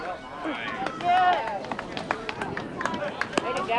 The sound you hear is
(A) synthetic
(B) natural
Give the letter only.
B